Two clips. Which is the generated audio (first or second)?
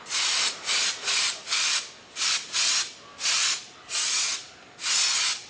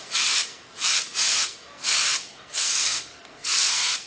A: second